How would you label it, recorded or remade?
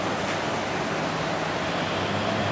recorded